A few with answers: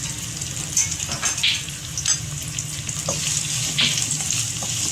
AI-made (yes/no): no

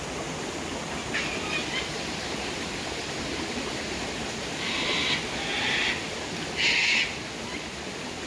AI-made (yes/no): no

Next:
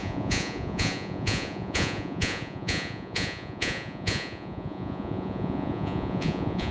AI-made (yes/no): yes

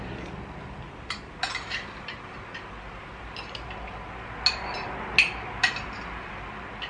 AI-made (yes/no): no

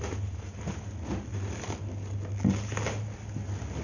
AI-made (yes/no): no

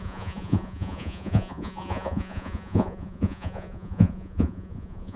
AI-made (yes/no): yes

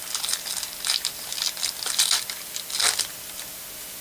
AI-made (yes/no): no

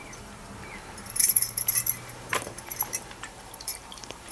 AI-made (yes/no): yes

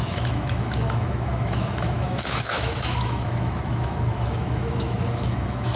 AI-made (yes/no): yes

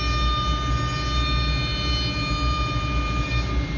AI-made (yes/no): no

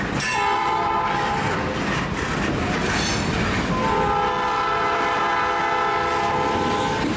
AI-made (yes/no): no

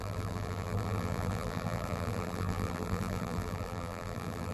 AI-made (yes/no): yes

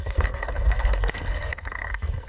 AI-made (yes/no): yes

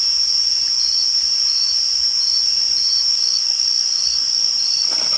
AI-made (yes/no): no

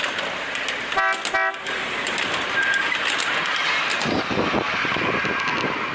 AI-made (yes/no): no